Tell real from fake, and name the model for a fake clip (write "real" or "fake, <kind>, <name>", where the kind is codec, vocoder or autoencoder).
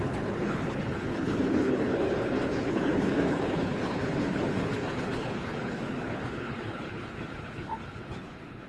fake, codec, HILCodec